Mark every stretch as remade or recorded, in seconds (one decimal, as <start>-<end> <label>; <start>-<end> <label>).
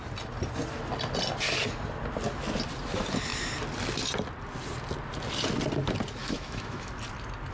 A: 0.0-6.2 recorded; 6.2-6.9 remade; 6.9-7.5 recorded